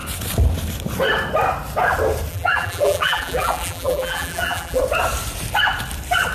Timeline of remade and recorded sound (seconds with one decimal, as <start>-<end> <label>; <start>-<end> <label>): 0.0-2.3 recorded; 2.3-4.8 remade; 4.8-6.3 recorded